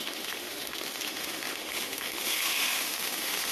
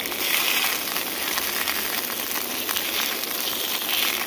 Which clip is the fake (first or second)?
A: first